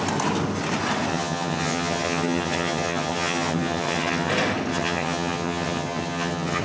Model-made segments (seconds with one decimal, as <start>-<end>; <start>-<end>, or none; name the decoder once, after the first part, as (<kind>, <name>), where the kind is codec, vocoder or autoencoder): 1.1-4.3 (vocoder, HiFi-GAN); 4.7-6.6